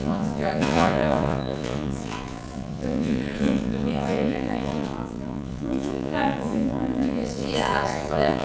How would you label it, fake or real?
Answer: fake